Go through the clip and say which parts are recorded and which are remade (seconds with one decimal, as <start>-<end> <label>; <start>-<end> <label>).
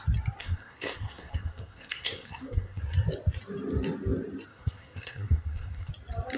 0.0-0.4 recorded; 0.4-2.8 remade; 2.8-4.5 recorded; 4.5-5.9 remade; 5.9-6.4 recorded